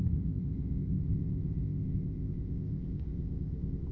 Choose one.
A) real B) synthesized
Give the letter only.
B